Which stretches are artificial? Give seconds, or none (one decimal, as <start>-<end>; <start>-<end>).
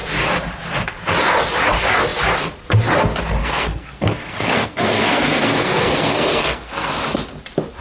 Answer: 3.4-6.9